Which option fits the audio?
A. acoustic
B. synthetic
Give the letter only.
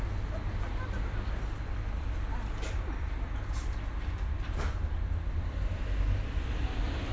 A